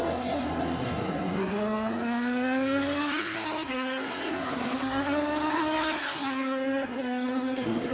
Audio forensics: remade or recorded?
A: remade